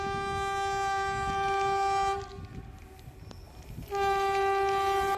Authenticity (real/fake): real